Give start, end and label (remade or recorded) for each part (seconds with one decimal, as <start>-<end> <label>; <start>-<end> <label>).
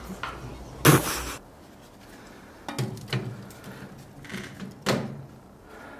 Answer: 0.0-6.0 recorded